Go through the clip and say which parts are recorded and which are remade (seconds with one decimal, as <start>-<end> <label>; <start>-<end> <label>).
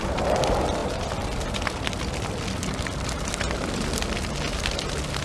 0.0-0.8 recorded; 0.8-3.9 remade; 3.9-5.2 recorded